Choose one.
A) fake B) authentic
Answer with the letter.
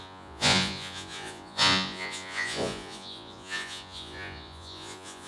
A